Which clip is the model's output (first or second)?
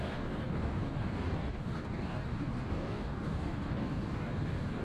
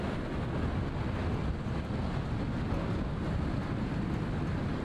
first